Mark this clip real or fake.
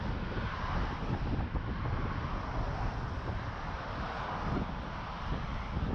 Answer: real